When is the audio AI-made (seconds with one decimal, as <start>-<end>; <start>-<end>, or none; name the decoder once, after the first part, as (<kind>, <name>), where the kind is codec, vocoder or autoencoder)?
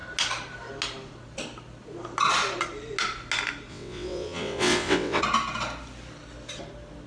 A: 3.7-5.2 (vocoder, WaveNeXt)